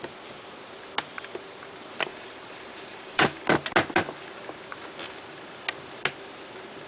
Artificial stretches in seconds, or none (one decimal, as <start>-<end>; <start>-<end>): 2.1-3.4